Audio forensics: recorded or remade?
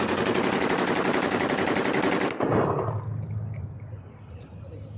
recorded